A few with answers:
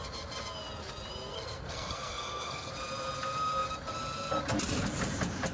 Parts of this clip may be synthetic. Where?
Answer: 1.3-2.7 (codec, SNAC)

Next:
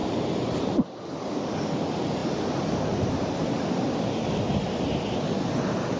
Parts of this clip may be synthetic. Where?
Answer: 0.0-1.0 (vocoder, BigVGAN v2); 2.2-3.7

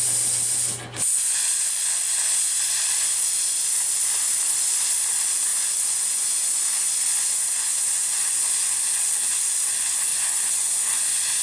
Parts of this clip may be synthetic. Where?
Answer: 5.5-9.0 (vocoder, Vocos); 10.1-11.0

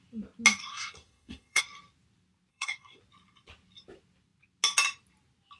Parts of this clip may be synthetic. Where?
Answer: 0.6-1.6 (codec, SNAC); 2.5-3.0

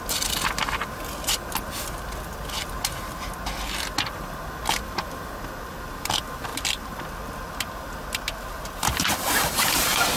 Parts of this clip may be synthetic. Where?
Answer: none

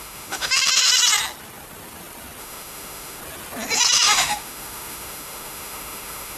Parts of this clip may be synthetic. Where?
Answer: 0.0-0.9 (autoencoder, DAC-VAE); 2.4-3.2; 3.9-6.4